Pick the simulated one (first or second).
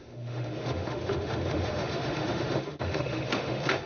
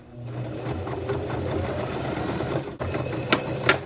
first